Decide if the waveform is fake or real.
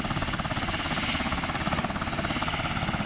real